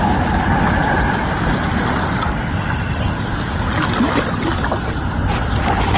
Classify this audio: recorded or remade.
recorded